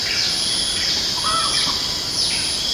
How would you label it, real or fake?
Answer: real